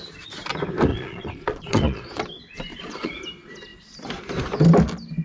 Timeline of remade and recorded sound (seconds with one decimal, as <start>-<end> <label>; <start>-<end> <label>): 0.0-0.9 recorded; 0.9-2.2 remade; 2.2-2.7 recorded; 2.7-3.2 remade; 3.2-5.2 recorded